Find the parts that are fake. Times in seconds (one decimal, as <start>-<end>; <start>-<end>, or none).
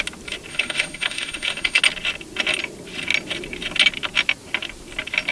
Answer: 0.5-1.8